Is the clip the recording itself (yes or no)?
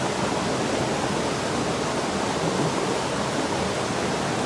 yes